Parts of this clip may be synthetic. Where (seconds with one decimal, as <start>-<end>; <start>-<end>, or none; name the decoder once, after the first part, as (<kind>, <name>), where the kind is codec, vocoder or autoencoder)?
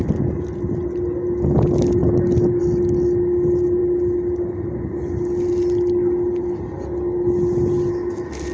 none